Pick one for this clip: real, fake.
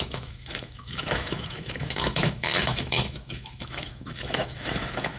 fake